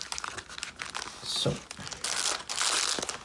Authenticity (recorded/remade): recorded